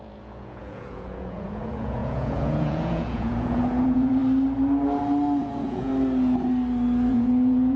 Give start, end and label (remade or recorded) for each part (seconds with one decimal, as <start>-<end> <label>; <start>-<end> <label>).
0.0-4.2 remade; 4.2-5.4 recorded; 5.4-5.9 remade; 5.9-7.1 recorded; 7.1-7.8 remade